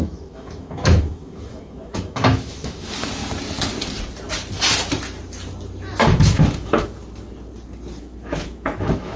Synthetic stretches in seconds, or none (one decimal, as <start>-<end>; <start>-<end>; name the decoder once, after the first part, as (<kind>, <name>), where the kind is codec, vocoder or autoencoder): 0.0-3.2 (autoencoder, DAC-VAE); 6.1-7.0; 8.0-9.2

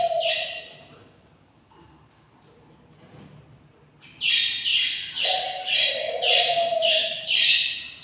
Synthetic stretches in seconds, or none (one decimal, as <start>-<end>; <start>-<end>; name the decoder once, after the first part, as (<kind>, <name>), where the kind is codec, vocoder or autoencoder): 6.8-7.3 (autoencoder, DAC-VAE)

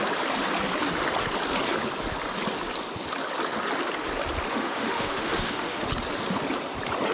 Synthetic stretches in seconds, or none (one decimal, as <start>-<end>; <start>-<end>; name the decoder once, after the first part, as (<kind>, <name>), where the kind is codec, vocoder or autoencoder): 4.5-5.8 (autoencoder, DAC-VAE)

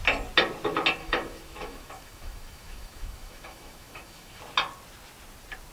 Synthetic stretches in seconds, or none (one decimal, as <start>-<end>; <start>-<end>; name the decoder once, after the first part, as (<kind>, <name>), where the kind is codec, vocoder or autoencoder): 1.0-4.4 (autoencoder, DAC-VAE)

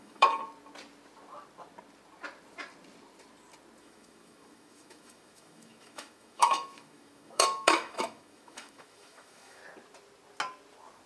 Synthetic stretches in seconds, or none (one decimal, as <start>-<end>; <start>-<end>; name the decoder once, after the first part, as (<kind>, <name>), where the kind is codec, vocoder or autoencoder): 0.0-0.4 (autoencoder, DAC-VAE); 3.8-9.6

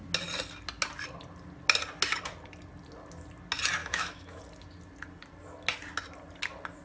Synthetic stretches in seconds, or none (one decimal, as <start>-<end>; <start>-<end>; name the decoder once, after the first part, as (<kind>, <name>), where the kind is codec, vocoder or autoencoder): 3.8-4.4 (autoencoder, DAC-VAE)

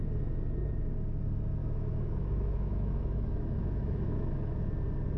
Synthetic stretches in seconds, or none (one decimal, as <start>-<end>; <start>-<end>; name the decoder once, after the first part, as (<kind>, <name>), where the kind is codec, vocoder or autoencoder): 1.6-4.7 (autoencoder, DAC-VAE)

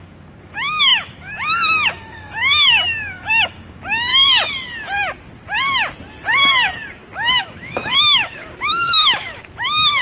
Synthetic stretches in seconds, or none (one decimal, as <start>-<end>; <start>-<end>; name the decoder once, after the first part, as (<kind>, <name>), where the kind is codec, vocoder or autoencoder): 0.0-4.1 (autoencoder, DAC-VAE); 7.4-10.0